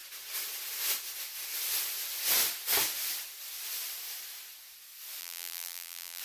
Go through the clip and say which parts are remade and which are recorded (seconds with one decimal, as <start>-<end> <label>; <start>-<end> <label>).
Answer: 0.0-5.2 recorded; 5.2-6.2 remade